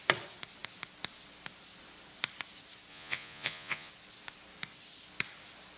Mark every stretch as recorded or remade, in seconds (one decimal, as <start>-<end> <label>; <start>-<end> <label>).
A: 0.0-2.9 recorded; 2.9-3.9 remade; 3.9-5.8 recorded